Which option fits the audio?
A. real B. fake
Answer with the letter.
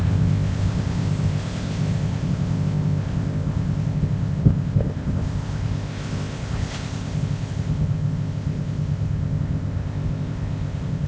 B